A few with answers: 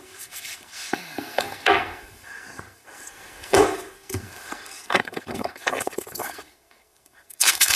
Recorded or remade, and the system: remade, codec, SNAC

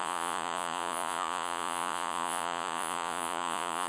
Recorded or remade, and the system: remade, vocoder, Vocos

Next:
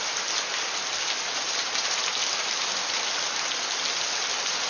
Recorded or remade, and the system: recorded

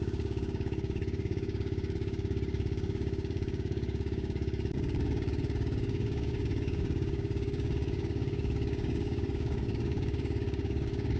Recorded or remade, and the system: remade, codec, DAC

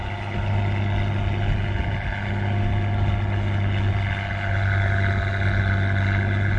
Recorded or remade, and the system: recorded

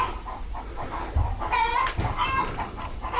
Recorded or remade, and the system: recorded